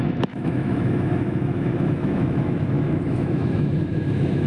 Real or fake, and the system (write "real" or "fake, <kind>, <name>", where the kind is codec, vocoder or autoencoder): fake, autoencoder, DAC-VAE